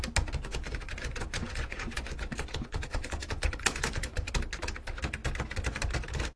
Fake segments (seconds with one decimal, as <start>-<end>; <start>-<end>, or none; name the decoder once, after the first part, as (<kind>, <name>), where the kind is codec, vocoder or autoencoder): 0.5-4.3 (vocoder, Vocos)